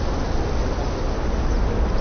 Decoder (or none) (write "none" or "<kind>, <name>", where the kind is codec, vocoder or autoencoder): none